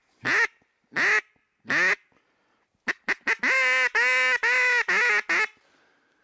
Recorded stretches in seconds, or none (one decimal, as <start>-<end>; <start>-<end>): 0.0-6.2